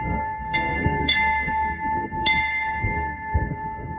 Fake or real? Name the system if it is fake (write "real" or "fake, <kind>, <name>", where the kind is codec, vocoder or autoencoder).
fake, codec, SNAC